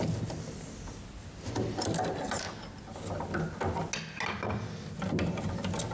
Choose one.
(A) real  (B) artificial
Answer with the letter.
A